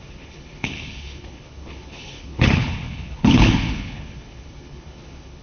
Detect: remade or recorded remade